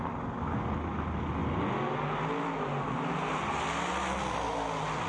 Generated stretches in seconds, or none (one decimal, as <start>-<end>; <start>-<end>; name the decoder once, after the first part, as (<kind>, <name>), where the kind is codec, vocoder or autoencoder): none